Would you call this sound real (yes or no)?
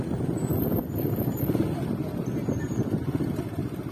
yes